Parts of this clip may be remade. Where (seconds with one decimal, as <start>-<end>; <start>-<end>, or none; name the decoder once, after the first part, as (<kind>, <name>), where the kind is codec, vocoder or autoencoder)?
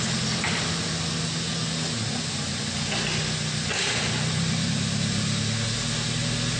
none